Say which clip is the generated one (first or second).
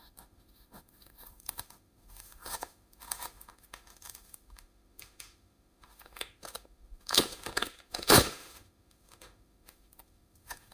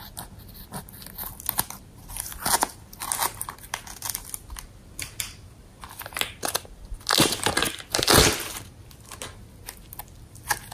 first